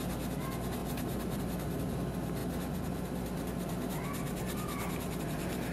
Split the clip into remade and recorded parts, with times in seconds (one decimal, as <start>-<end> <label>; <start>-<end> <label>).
0.0-0.8 recorded; 0.8-1.4 remade; 1.4-5.7 recorded